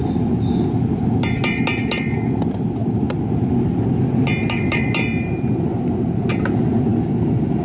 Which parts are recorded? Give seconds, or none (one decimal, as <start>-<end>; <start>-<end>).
0.0-7.6